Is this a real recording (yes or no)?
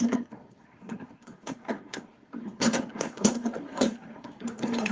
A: no